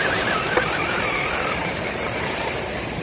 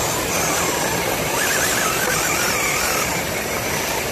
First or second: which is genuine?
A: second